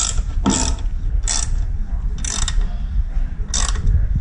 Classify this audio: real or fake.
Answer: real